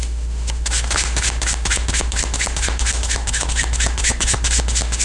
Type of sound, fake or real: fake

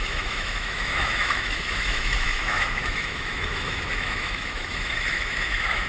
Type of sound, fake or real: fake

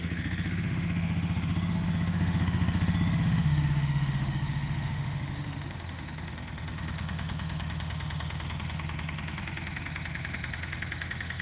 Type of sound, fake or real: fake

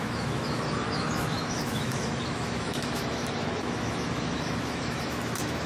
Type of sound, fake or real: fake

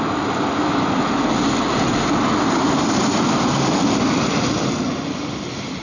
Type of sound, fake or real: real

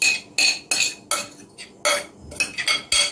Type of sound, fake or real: real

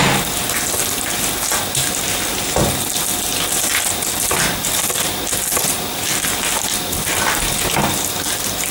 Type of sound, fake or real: real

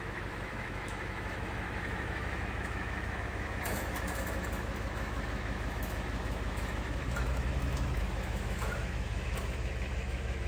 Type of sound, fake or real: fake